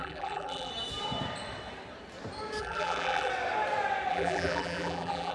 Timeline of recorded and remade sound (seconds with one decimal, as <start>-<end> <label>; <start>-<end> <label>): 0.0-0.7 remade; 0.7-2.6 recorded; 2.6-3.3 remade; 3.3-4.1 recorded; 4.1-5.3 remade

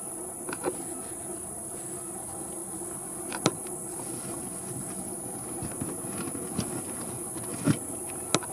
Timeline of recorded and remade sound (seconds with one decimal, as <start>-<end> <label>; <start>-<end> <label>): 0.0-2.6 recorded; 2.6-6.0 remade; 6.0-7.5 recorded; 7.5-8.1 remade; 8.1-8.5 recorded

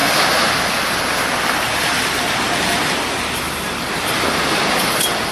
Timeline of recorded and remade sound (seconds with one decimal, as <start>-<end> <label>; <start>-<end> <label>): 0.0-5.3 recorded

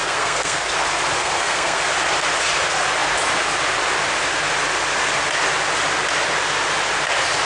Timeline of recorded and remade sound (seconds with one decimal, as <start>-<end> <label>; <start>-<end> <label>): 0.0-0.6 remade; 0.6-1.2 recorded; 1.2-1.8 remade; 1.8-7.4 recorded

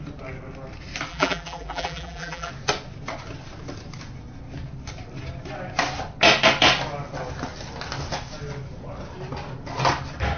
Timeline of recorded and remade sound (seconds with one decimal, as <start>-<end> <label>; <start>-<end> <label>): 0.0-1.1 recorded; 1.1-2.5 remade; 2.5-10.4 recorded

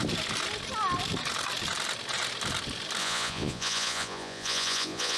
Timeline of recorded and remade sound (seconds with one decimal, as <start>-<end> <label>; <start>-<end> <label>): 0.0-3.0 recorded; 3.0-5.2 remade

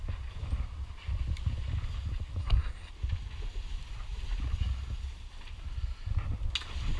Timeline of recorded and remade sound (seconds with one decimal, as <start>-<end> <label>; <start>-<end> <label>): 0.0-2.4 recorded; 2.4-2.9 remade; 2.9-7.0 recorded

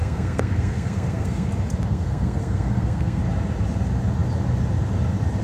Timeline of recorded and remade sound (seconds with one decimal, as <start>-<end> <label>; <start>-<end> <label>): 0.0-1.5 remade; 1.5-1.9 recorded; 1.9-3.2 remade; 3.2-5.4 recorded